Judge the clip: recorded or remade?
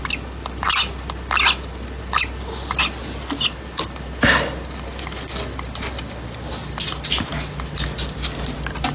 recorded